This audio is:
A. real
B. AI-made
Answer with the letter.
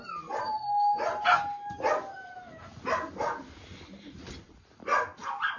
A